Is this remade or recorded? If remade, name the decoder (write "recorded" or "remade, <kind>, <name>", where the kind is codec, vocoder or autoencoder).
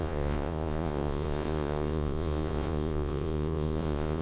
remade, vocoder, Vocos